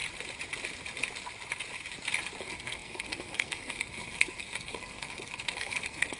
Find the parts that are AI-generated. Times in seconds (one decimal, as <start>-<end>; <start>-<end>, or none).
2.4-6.2